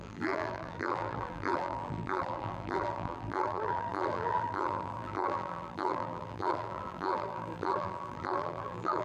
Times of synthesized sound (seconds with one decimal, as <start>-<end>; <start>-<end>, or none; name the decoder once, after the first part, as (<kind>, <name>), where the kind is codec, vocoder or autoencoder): 0.0-9.0 (vocoder, BigVGAN v2)